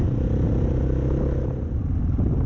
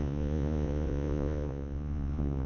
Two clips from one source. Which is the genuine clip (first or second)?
first